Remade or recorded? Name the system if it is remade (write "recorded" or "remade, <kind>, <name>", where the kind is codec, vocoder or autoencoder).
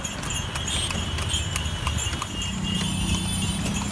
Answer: recorded